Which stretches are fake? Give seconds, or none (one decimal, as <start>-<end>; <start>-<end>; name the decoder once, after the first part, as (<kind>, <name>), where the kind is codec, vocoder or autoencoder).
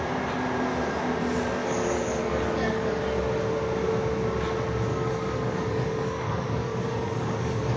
1.6-3.0 (codec, DAC); 4.9-7.8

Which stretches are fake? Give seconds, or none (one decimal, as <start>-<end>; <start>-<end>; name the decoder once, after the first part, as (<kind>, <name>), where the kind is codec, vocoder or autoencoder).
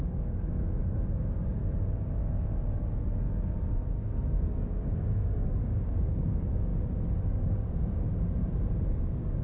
0.0-1.6 (codec, DAC); 3.7-6.7; 7.3-8.4; 9.0-9.4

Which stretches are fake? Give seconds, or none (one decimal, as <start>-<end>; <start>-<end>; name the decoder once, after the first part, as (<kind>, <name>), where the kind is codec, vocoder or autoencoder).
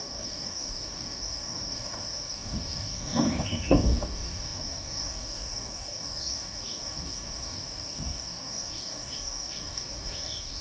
0.0-10.6 (codec, DAC)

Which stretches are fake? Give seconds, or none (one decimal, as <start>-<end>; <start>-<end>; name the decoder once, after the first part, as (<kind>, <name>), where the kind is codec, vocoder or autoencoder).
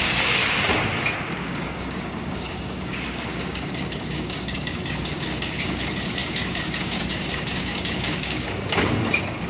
0.0-0.4 (codec, DAC); 1.2-9.5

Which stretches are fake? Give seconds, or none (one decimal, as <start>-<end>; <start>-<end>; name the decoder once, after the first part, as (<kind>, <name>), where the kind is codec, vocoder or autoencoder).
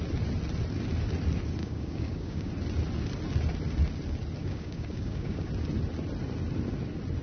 1.6-2.5 (codec, DAC); 4.4-5.5